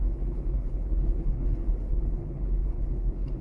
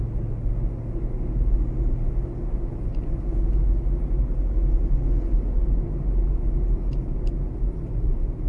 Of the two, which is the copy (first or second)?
first